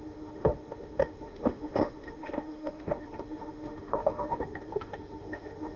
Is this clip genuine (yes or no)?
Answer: no